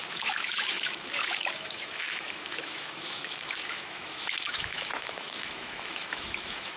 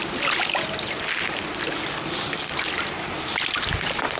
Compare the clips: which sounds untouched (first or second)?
second